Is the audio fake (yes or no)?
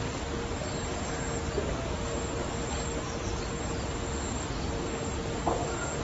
no